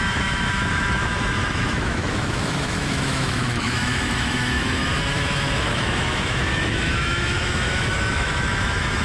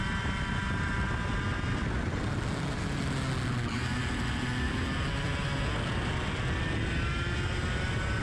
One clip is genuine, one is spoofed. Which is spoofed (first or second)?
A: first